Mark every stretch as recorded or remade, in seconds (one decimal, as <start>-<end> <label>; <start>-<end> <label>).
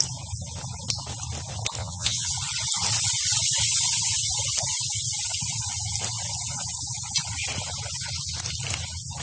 0.0-1.8 recorded; 1.8-2.3 remade; 2.3-9.2 recorded